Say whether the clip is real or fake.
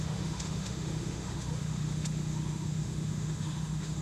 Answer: fake